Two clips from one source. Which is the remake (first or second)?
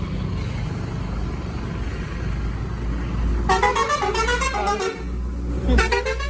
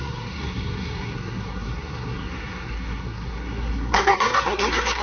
second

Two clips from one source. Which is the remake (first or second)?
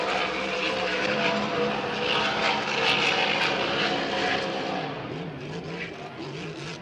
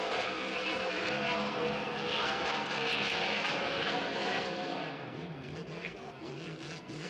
second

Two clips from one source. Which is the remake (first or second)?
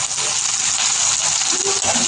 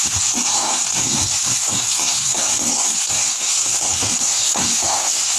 second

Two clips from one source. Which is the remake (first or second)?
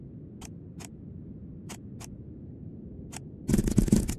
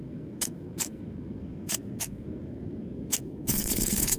second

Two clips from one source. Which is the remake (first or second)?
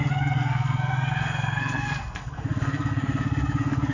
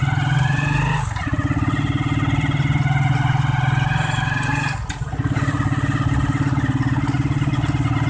first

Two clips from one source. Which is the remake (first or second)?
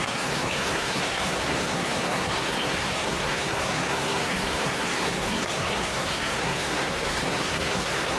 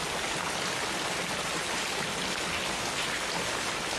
first